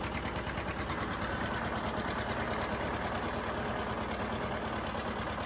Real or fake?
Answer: real